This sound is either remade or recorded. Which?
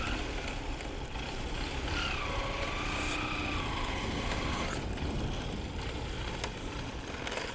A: recorded